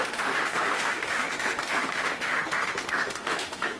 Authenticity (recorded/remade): remade